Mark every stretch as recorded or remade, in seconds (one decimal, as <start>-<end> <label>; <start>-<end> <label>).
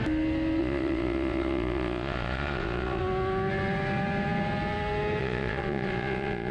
0.0-0.6 recorded; 0.6-3.0 remade; 3.0-5.2 recorded; 5.2-6.5 remade